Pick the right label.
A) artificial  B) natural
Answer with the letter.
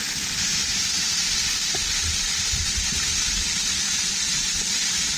B